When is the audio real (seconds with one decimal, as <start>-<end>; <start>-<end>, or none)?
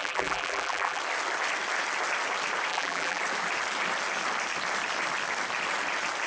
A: 1.0-2.7; 3.2-6.3